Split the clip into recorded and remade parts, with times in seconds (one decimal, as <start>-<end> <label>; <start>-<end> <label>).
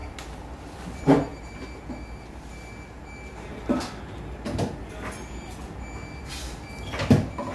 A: 0.0-7.5 recorded